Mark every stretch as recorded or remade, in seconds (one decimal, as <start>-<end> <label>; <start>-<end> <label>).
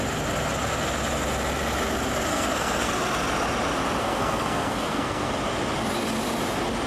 0.0-2.3 recorded; 2.3-2.9 remade; 2.9-4.0 recorded; 4.0-5.3 remade; 5.3-6.9 recorded